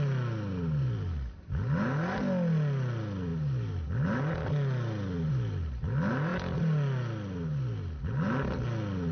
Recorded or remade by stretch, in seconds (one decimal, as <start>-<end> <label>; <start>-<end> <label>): 0.0-9.1 recorded